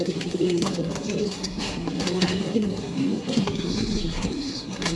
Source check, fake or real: fake